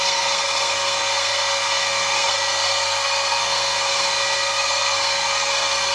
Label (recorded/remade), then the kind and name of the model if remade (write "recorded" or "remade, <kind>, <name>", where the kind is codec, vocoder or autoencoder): remade, codec, SNAC